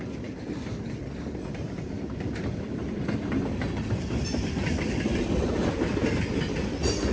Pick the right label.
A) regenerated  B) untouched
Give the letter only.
A